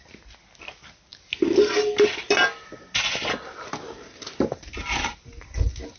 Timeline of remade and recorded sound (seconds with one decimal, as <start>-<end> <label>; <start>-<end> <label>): 0.0-6.0 recorded